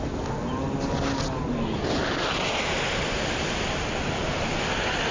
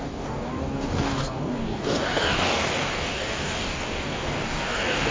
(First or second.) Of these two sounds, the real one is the first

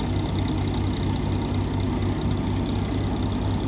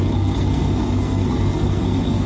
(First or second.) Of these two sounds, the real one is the first